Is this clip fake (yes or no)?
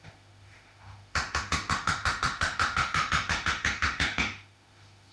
yes